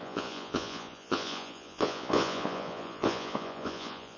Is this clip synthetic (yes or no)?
yes